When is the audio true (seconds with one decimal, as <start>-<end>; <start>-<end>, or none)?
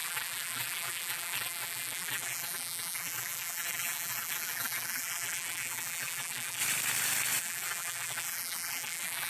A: 6.6-7.4